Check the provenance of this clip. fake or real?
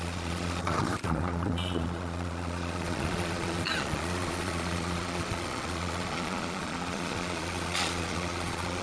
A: fake